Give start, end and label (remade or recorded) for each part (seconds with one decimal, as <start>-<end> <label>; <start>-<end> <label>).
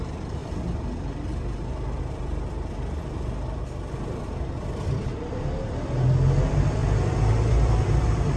0.0-6.8 remade; 6.8-7.5 recorded; 7.5-8.4 remade